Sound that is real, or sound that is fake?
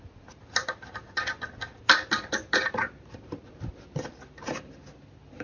real